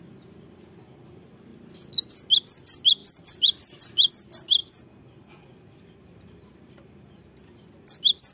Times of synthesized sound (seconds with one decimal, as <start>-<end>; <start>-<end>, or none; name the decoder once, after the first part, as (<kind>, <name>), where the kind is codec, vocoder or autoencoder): 3.0-4.1 (vocoder, BigVGAN v2)